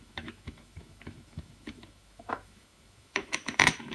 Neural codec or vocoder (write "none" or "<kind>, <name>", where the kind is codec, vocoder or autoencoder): autoencoder, DAC-VAE